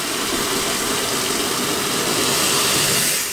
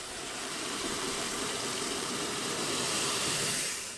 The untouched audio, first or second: first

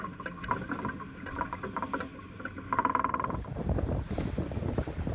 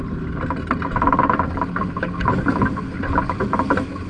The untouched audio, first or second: second